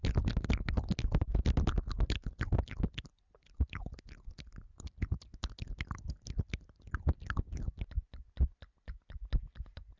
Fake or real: real